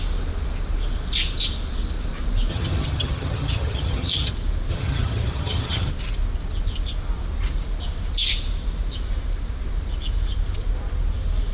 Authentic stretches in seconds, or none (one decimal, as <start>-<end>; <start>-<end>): 0.0-2.5; 4.3-4.7; 5.9-11.5